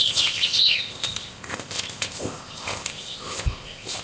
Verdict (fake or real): fake